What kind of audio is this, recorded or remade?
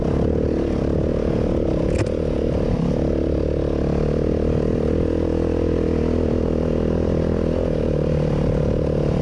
recorded